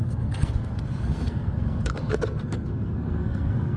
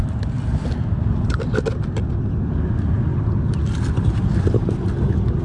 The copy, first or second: first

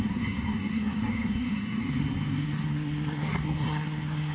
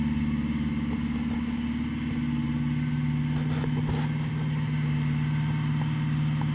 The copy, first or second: first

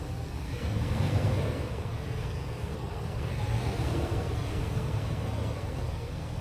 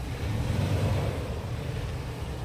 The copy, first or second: first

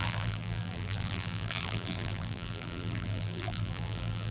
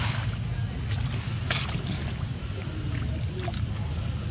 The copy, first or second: first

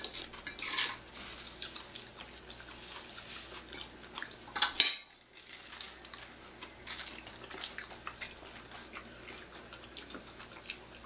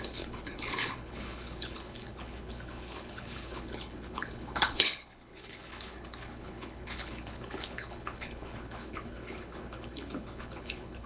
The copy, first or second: second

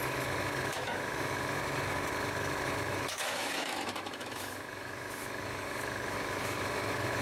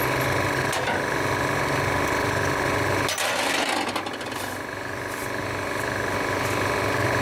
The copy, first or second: first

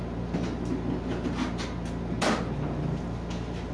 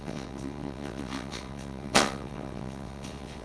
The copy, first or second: second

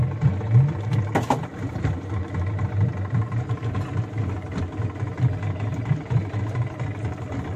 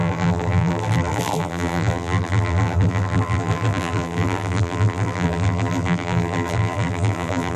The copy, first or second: second